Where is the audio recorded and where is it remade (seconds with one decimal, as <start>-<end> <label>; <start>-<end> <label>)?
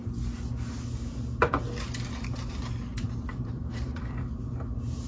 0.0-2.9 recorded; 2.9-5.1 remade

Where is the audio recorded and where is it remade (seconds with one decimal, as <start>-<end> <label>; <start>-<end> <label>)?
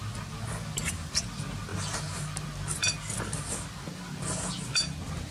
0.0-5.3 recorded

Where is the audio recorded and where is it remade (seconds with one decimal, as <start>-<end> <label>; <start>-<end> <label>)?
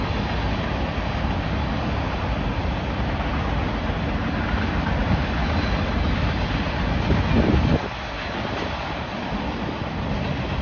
0.0-10.6 recorded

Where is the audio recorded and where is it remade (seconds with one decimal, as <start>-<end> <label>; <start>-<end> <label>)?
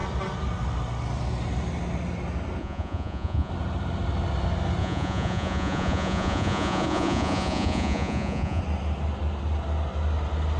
0.0-2.6 recorded; 2.6-3.5 remade; 3.5-4.8 recorded; 4.8-8.6 remade; 8.6-10.6 recorded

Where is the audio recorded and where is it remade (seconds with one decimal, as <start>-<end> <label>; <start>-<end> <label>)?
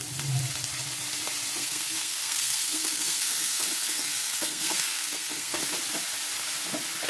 0.0-1.6 recorded; 1.6-5.6 remade; 5.6-7.1 recorded